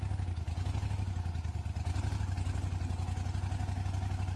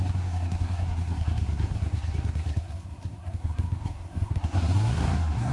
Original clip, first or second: first